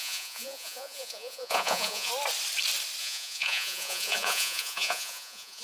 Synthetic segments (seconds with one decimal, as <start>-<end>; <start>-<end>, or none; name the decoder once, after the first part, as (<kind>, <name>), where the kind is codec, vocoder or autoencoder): 0.0-2.1 (vocoder, Vocos); 3.0-5.6